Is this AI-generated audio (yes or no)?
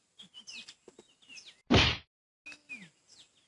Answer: no